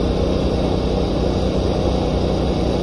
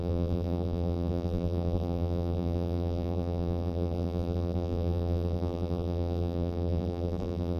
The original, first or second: first